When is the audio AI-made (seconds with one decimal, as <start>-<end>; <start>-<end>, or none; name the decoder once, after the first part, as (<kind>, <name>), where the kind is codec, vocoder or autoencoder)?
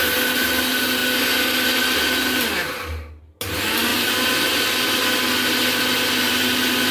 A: none